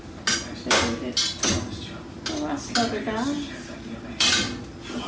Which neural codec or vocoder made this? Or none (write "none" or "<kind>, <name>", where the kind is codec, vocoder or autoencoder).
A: none